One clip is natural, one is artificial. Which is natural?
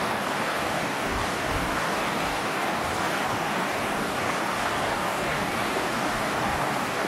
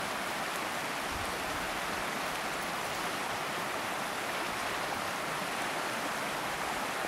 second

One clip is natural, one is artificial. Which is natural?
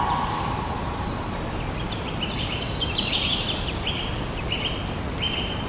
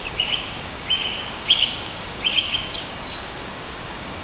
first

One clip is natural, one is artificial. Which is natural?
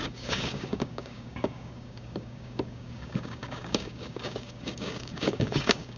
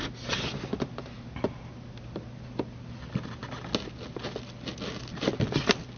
second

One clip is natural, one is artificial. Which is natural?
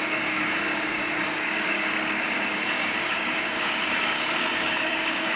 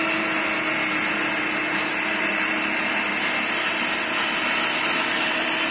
second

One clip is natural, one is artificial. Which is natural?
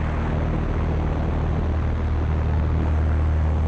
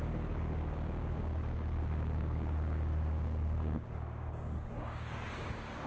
first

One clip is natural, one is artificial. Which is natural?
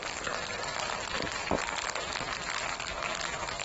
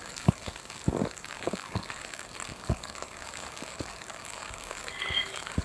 first